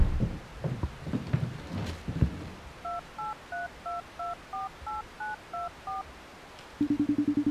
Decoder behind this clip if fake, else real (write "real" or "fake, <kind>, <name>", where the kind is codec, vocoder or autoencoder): real